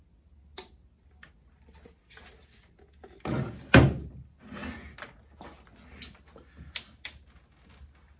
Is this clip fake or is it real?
real